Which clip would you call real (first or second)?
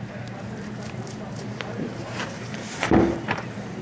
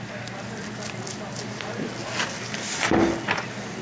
second